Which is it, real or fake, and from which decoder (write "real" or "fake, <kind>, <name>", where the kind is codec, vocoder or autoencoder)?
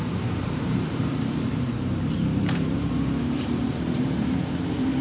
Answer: fake, vocoder, BigVGAN v2